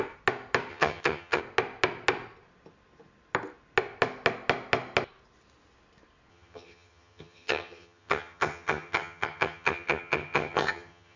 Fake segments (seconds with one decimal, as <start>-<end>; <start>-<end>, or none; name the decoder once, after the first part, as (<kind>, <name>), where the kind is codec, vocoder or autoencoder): 0.7-1.4 (vocoder, HiFi-GAN); 6.3-11.2